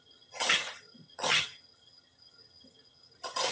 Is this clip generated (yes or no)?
yes